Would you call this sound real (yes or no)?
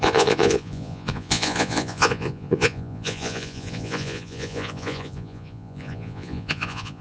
no